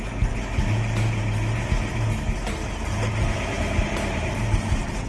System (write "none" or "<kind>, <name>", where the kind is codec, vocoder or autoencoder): none